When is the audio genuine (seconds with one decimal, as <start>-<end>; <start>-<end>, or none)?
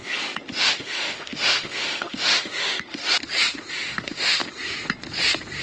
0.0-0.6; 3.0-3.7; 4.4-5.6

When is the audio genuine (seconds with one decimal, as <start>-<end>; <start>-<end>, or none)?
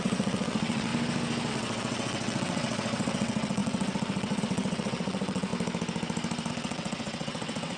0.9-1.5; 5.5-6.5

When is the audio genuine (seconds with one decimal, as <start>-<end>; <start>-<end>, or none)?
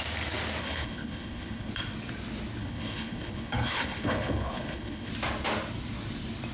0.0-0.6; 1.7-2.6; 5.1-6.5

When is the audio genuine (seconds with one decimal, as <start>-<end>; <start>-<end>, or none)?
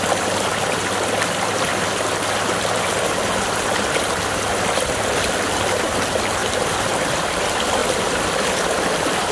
0.0-6.4; 6.9-7.8